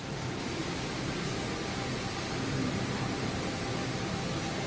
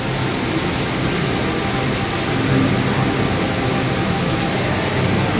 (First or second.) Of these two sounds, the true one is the second